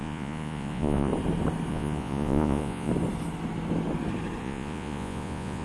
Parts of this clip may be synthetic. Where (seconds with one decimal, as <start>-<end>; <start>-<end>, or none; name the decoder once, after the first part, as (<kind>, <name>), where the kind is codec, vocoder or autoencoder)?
0.0-1.1 (vocoder, Vocos); 1.7-2.9; 4.4-5.6